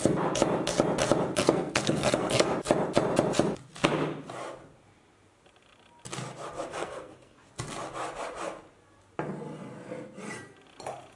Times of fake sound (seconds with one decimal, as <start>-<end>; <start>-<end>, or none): 1.4-2.5; 6.7-7.5